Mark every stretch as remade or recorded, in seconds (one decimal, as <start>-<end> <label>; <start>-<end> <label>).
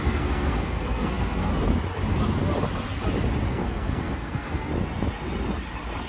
0.0-1.5 remade; 1.5-3.5 recorded; 3.5-4.7 remade; 4.7-6.1 recorded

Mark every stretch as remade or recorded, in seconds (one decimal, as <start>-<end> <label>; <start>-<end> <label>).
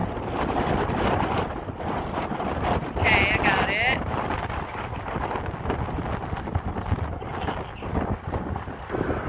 0.0-9.3 recorded